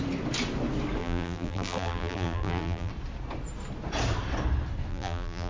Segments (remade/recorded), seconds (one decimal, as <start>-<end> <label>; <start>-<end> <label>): 0.0-1.0 recorded; 1.0-2.9 remade; 2.9-4.9 recorded; 4.9-5.5 remade